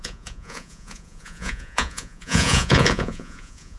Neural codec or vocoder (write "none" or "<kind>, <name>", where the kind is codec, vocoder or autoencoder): vocoder, Vocos